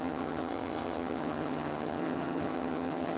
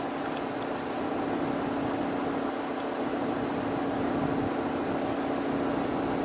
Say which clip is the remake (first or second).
first